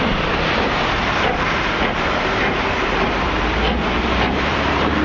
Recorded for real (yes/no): no